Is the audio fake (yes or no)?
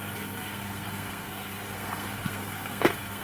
yes